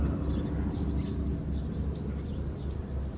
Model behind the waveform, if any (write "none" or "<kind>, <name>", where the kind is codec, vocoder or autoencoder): none